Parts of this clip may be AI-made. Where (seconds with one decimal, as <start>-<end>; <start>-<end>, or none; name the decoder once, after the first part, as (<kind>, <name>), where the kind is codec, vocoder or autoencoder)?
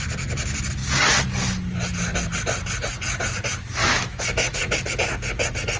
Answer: 3.8-4.6 (autoencoder, DAC-VAE)